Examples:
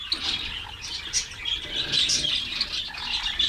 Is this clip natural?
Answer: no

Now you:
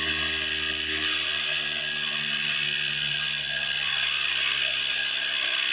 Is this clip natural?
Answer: yes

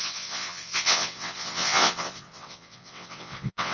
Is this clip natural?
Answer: no